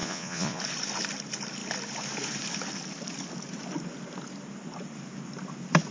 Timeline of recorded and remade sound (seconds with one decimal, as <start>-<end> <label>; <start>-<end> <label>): 0.0-0.6 remade; 0.6-5.9 recorded